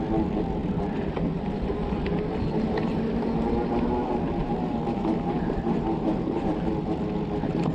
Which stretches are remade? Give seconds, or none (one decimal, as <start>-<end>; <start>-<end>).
4.4-6.7